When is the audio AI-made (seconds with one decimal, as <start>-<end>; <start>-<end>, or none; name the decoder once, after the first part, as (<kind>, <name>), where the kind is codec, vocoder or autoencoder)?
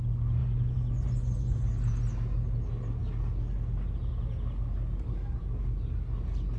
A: 0.4-1.7 (vocoder, Vocos)